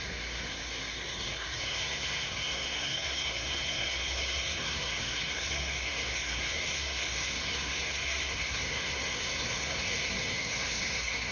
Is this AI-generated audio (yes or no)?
yes